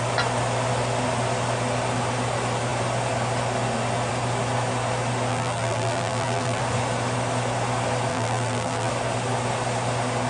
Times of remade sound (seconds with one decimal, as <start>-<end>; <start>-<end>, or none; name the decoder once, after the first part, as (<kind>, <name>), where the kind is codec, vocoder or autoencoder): 5.3-6.6 (vocoder, BigVGAN v2); 8.1-8.9